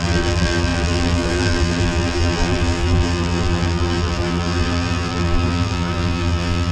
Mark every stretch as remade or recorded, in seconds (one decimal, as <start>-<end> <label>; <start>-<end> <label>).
0.0-6.7 remade